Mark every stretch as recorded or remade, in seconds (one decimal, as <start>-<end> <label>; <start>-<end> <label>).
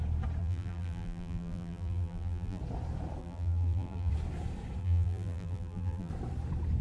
0.0-0.4 recorded; 0.4-2.6 remade; 2.6-3.2 recorded; 3.2-4.1 remade; 4.1-4.8 recorded; 4.8-6.1 remade; 6.1-6.8 recorded